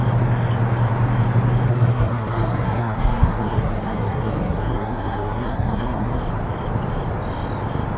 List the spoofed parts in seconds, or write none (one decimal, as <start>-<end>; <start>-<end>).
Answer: 1.7-6.2